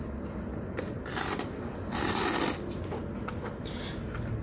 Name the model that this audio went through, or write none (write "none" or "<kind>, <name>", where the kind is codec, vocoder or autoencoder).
none